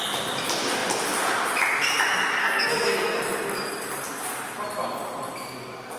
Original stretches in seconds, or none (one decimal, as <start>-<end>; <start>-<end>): 0.0-2.4; 3.2-6.0